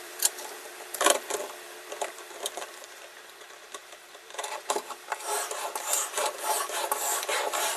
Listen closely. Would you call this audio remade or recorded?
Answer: remade